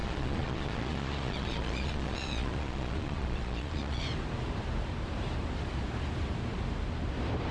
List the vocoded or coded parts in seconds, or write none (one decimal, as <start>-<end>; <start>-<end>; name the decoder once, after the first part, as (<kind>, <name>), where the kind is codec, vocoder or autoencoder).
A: 0.0-4.0 (vocoder, Vocos)